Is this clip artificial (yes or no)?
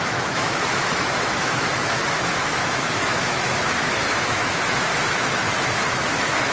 yes